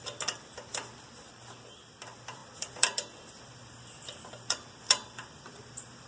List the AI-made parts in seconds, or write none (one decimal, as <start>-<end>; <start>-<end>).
0.7-2.0; 2.4-6.1